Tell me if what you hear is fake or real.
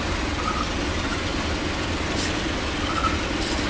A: real